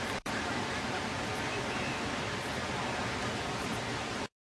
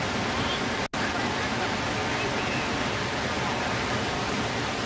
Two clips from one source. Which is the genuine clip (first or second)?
second